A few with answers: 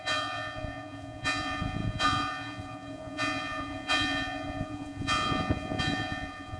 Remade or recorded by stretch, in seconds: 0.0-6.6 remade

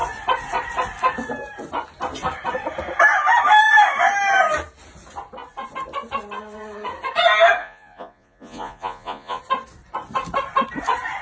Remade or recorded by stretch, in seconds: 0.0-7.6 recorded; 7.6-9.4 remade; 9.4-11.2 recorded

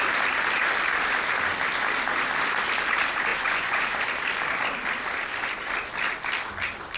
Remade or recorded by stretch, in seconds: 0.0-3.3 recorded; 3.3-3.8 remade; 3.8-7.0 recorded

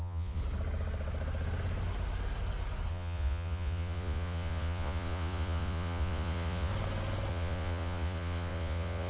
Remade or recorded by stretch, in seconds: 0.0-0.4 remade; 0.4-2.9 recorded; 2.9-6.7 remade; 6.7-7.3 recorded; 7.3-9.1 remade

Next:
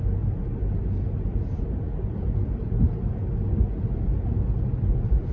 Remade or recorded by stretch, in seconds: 0.0-5.3 recorded

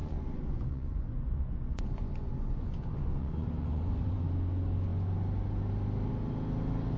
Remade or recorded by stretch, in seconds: 0.0-4.2 remade; 4.2-7.0 recorded

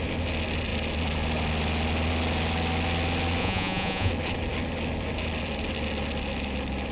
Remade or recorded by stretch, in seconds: 0.0-3.4 recorded; 3.4-4.1 remade; 4.1-6.9 recorded